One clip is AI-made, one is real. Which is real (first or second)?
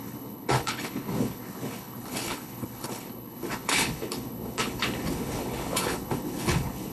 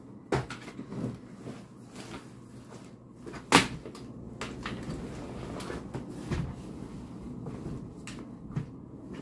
second